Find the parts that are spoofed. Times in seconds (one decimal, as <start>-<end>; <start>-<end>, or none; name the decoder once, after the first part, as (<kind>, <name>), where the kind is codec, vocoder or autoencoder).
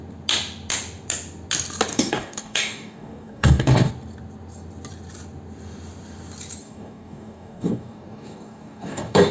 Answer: 1.9-3.9 (codec, DAC); 6.6-9.3